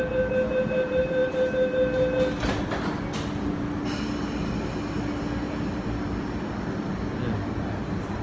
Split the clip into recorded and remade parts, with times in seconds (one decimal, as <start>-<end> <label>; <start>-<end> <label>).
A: 0.0-8.2 recorded

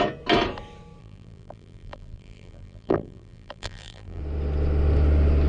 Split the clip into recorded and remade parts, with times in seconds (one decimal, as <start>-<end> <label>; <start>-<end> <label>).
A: 0.0-1.0 recorded; 1.0-4.2 remade; 4.2-5.5 recorded

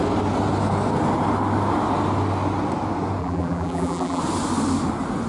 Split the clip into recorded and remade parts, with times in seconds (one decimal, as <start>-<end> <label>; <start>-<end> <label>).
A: 0.0-3.2 recorded; 3.2-4.2 remade; 4.2-5.3 recorded

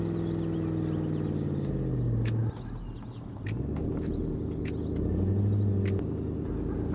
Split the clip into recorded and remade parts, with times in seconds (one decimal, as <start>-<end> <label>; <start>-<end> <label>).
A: 0.0-6.9 recorded

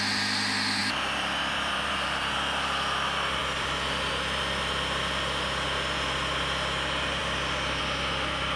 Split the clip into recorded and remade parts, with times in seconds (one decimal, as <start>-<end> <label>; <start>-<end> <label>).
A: 0.0-0.8 recorded; 0.8-1.9 remade; 1.9-3.4 recorded; 3.4-4.1 remade; 4.1-8.6 recorded

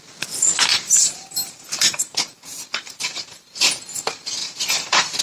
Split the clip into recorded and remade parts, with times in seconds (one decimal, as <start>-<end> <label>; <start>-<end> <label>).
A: 0.0-0.7 recorded; 0.7-3.8 remade; 3.8-4.4 recorded; 4.4-5.2 remade

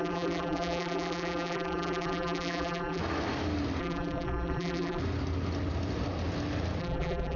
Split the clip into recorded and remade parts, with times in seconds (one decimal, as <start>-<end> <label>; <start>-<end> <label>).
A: 0.0-3.0 remade; 3.0-3.8 recorded; 3.8-5.0 remade; 5.0-6.8 recorded; 6.8-7.4 remade